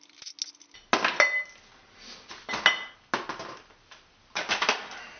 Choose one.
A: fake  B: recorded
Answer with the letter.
B